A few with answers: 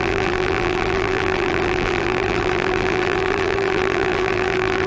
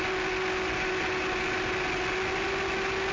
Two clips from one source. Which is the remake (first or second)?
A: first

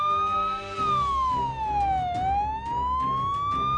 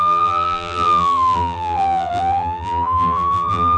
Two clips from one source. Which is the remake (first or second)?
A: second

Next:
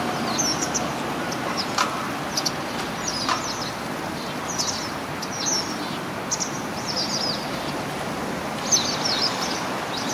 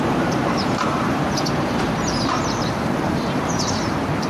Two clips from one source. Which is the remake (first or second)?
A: second